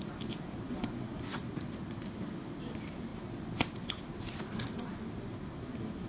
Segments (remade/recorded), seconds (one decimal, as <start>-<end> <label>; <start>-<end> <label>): 0.0-6.1 recorded